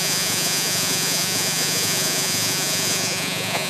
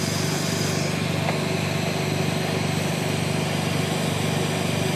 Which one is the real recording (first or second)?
second